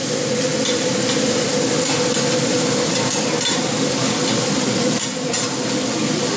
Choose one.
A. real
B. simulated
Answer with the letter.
B